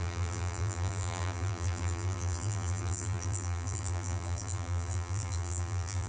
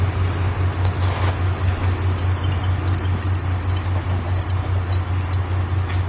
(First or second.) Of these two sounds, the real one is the second